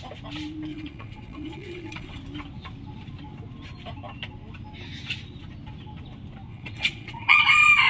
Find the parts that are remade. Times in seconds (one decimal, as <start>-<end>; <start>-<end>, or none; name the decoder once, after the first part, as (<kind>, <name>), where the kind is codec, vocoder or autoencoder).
0.7-2.2 (vocoder, WaveNeXt); 6.5-7.4